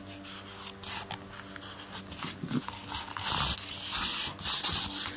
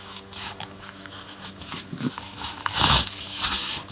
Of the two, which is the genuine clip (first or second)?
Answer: first